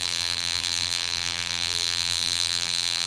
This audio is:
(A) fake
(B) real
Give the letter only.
A